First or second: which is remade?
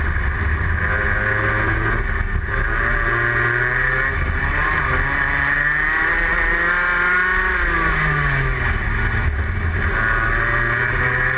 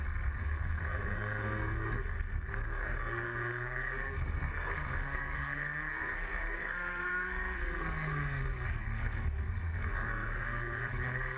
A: second